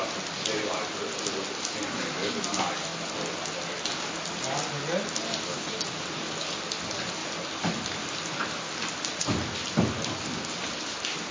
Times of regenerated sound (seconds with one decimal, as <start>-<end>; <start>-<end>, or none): none